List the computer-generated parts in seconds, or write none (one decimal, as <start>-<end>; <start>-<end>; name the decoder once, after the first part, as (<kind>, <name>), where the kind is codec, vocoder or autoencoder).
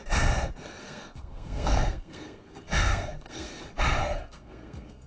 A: 0.8-3.5 (codec, SNAC); 4.0-5.1